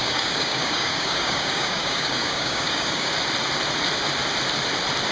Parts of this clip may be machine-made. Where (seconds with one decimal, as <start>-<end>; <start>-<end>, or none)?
0.0-3.1